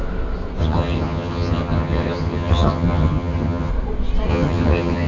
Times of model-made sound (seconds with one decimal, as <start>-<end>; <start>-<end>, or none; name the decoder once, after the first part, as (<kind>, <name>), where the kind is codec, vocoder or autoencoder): 0.6-3.7 (vocoder, HiFi-GAN); 4.3-5.1